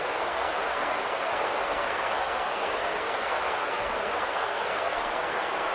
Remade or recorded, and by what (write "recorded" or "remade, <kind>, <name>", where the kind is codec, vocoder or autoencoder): remade, codec, SNAC